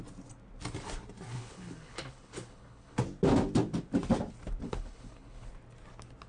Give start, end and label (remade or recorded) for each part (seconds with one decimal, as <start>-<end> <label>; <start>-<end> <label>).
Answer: 0.0-1.3 recorded; 1.3-3.0 remade; 3.0-4.6 recorded; 4.6-5.5 remade; 5.5-6.3 recorded